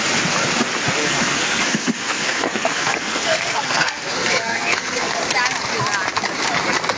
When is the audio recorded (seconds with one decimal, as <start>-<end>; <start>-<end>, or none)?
0.0-1.0; 5.2-7.0